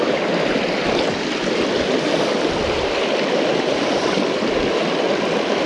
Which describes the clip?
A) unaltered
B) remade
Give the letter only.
A